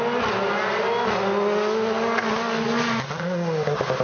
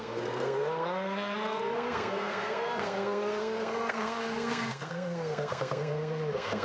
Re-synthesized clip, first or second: second